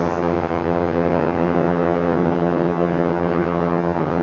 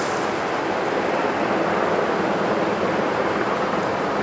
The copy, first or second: first